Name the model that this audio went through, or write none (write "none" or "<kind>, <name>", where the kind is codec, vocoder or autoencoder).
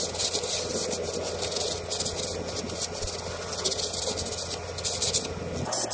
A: none